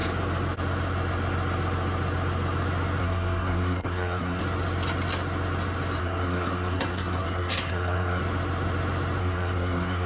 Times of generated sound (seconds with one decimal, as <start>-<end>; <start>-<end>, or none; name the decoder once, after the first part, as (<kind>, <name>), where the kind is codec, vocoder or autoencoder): 3.0-4.4 (codec, SNAC); 6.0-8.2; 9.2-10.1

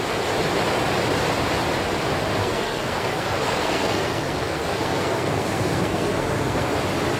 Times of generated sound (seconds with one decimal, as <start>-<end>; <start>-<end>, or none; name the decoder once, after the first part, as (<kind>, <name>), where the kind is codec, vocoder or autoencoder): 2.4-6.7 (codec, SNAC)